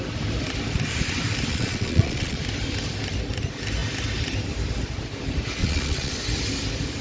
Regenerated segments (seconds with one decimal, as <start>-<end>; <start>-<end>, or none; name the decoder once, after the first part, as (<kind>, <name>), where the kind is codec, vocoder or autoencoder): 1.5-2.4 (vocoder, Vocos); 5.6-6.1

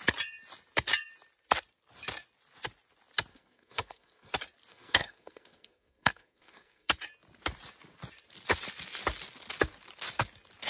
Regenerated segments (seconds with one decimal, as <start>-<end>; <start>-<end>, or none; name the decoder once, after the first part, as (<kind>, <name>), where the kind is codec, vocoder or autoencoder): 3.3-4.3 (codec, SNAC); 4.7-6.9

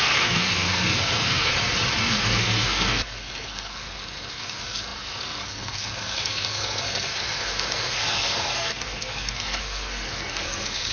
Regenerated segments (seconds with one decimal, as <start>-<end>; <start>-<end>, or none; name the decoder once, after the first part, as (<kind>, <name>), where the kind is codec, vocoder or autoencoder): 0.0-1.5 (codec, SNAC); 2.0-10.9